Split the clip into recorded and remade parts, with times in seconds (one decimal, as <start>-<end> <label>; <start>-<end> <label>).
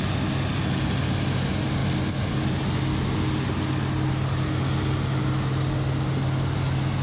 0.0-7.0 recorded